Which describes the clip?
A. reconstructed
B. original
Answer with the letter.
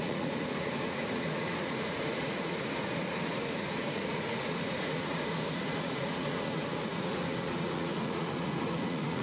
A